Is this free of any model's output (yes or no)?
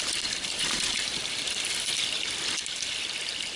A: no